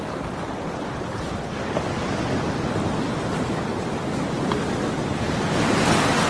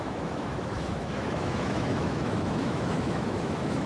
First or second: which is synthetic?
second